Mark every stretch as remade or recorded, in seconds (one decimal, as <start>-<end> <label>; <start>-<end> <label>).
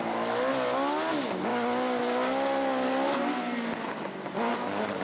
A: 0.0-5.0 recorded